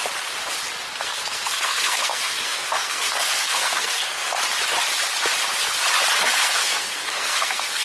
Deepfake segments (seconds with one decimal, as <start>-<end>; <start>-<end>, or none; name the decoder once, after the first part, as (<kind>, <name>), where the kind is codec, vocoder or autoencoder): 0.9-4.4 (codec, SNAC); 6.2-7.8